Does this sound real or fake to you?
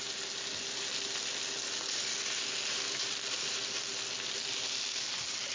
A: real